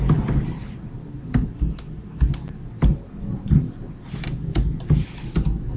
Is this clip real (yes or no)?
yes